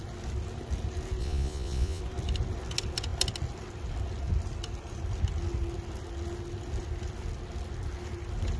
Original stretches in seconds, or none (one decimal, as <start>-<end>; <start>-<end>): 0.0-1.2; 2.0-8.6